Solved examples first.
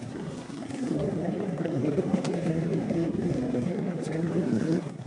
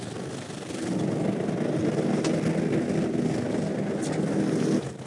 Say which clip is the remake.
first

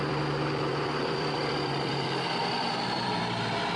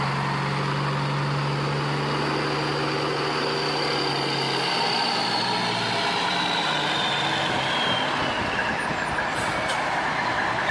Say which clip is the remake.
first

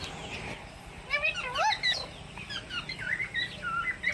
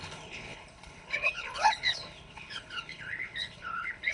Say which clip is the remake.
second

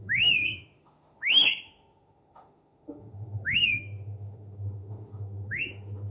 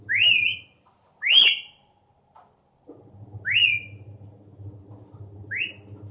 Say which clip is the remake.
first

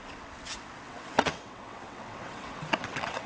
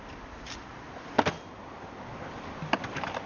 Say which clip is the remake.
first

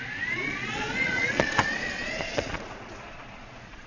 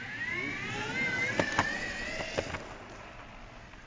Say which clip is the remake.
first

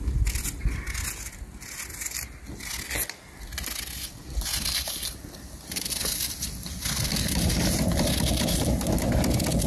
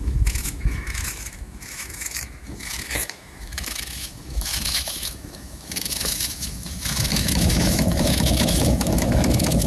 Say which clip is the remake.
second